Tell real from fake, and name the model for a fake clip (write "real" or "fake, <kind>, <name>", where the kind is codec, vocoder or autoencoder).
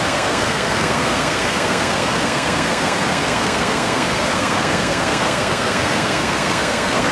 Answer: fake, codec, SNAC